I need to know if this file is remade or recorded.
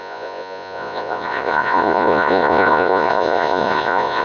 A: remade